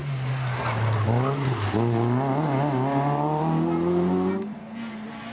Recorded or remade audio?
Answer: recorded